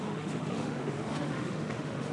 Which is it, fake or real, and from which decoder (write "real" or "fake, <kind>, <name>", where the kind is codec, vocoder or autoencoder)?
fake, autoencoder, DAC-VAE